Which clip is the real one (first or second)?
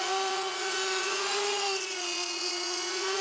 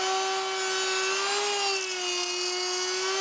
second